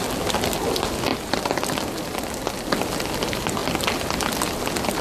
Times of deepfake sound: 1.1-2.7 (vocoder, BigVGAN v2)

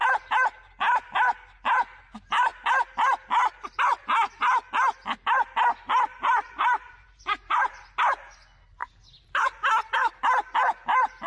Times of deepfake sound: 6.1-7.9 (vocoder, BigVGAN v2); 8.8-10.0

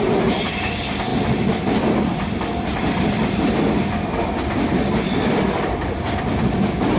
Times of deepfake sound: none